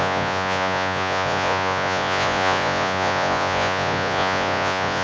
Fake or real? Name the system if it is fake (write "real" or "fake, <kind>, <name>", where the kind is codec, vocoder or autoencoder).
fake, vocoder, Vocos